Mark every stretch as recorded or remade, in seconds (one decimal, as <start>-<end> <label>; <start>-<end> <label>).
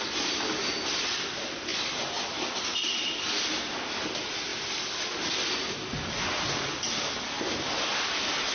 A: 0.0-8.5 recorded